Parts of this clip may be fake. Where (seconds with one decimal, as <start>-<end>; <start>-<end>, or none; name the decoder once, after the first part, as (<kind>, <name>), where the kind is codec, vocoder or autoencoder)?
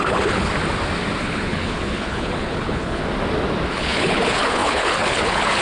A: 0.0-0.5 (codec, HILCodec); 1.2-3.0; 3.7-5.6